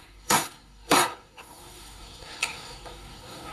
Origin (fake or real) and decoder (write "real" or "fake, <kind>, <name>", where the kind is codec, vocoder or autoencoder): fake, codec, SNAC